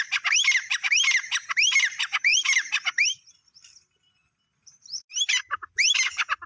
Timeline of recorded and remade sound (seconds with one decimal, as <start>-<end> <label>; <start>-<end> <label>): 0.0-2.3 recorded; 2.3-4.1 remade; 4.1-6.5 recorded